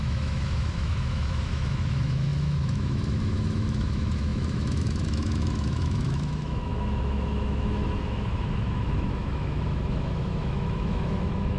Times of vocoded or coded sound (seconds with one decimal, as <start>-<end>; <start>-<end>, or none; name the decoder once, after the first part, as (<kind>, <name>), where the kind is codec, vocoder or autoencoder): 0.0-11.6 (autoencoder, DAC-VAE)